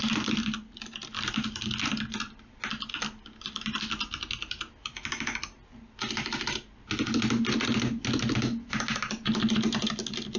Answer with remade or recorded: recorded